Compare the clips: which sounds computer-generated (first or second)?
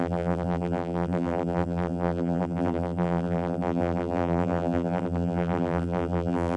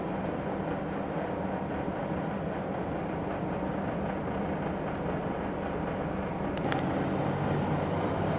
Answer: first